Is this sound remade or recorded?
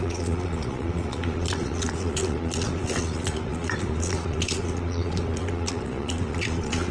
remade